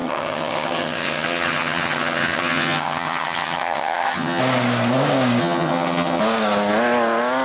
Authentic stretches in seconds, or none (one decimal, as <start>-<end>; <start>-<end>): 4.4-5.4; 6.2-7.4